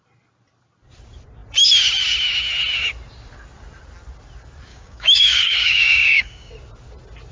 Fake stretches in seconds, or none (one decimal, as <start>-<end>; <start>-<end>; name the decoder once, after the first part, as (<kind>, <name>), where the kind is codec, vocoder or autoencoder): 4.7-6.5 (codec, DAC)